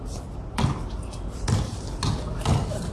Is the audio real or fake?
real